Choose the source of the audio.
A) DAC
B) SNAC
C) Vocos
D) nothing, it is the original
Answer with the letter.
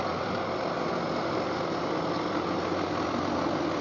D